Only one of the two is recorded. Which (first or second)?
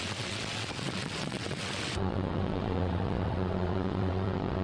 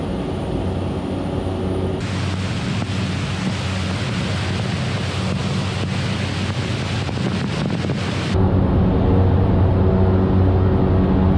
second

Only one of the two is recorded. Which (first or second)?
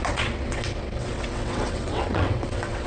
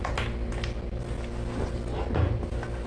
second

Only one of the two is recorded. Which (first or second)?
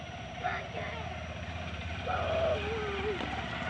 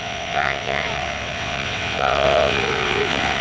first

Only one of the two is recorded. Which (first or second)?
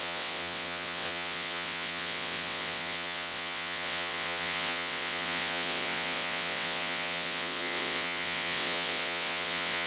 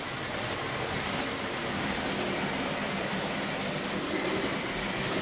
second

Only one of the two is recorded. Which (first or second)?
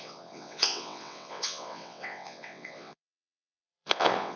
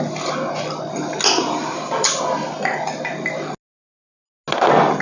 second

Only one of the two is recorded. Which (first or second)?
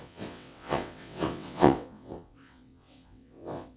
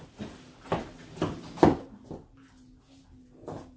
second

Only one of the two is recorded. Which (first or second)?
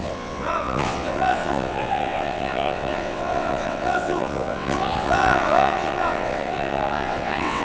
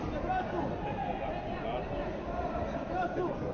second